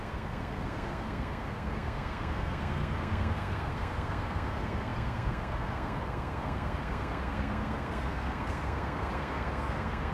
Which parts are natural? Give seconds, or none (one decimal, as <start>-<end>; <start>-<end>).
none